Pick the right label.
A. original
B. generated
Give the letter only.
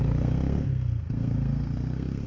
B